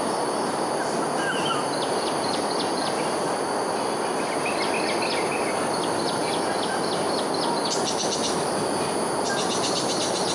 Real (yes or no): yes